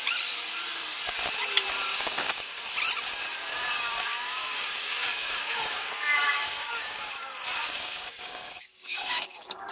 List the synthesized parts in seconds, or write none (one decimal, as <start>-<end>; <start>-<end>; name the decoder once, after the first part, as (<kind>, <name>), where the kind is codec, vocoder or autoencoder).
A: 1.9-2.6 (codec, DAC); 3.5-7.1; 7.6-9.7